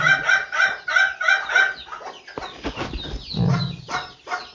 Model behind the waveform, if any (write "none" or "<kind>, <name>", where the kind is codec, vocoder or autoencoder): none